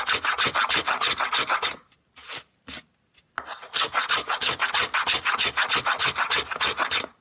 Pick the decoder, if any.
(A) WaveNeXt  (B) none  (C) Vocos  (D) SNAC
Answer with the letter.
B